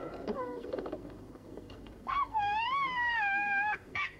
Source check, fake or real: fake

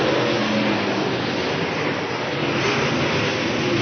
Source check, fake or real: real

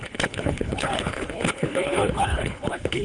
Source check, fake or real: fake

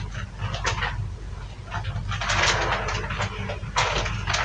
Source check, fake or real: real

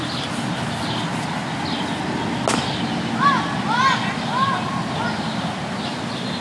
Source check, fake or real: real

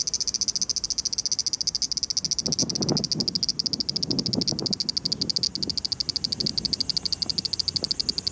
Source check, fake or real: real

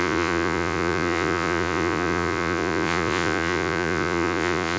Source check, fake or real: fake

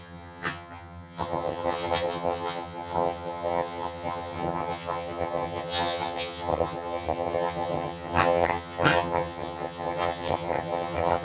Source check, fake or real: fake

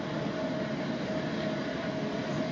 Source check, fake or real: real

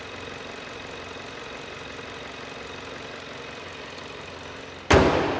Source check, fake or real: real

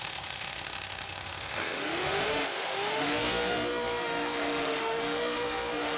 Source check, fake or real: fake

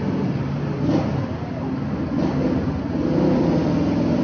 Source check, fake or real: real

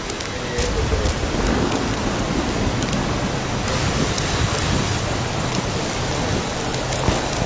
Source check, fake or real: real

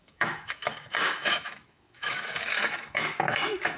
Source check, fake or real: fake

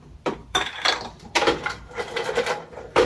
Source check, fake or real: fake